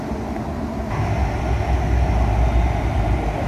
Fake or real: real